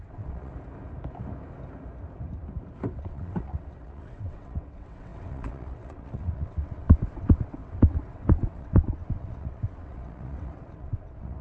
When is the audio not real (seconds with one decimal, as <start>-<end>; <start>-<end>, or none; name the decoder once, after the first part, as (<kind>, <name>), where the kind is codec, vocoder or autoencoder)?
0.0-0.5 (vocoder, WaveNeXt); 3.0-11.4